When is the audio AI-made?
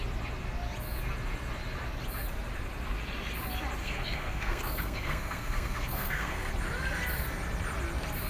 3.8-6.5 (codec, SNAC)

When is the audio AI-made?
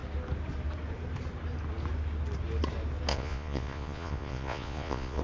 3.1-5.2 (vocoder, Vocos)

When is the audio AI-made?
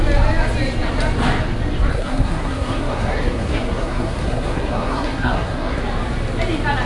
1.9-5.8 (codec, SNAC)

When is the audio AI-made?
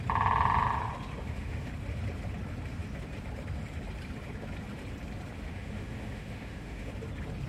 1.2-1.7 (autoencoder, DAC-VAE); 5.5-6.9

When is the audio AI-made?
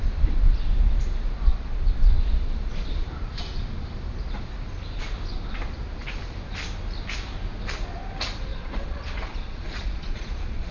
8.5-10.7 (vocoder, Vocos)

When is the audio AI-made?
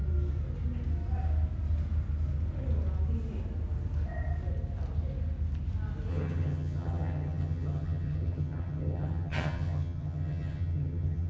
6.1-11.3 (vocoder, HiFi-GAN)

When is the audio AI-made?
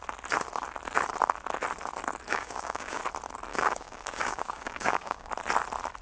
2.3-3.0 (codec, DAC); 3.5-5.3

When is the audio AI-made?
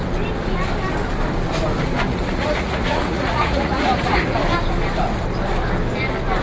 2.1-4.2 (vocoder, Vocos)